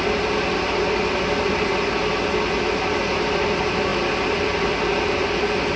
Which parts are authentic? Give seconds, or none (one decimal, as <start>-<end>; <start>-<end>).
0.0-5.8